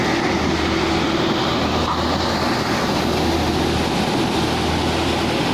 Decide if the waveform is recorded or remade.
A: recorded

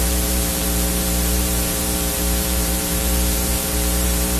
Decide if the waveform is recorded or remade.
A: remade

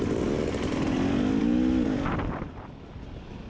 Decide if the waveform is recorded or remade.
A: recorded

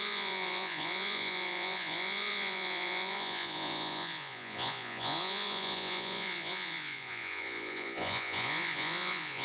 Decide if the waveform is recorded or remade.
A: remade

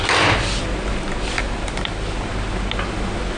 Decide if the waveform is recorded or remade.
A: recorded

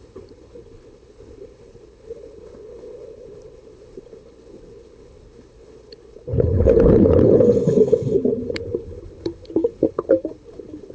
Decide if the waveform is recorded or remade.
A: remade